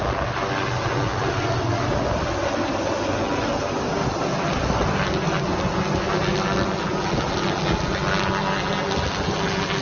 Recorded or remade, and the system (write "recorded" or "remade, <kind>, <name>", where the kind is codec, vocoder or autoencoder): recorded